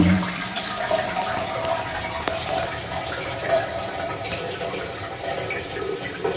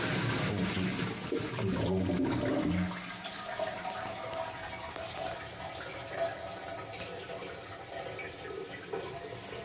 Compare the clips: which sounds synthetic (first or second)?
first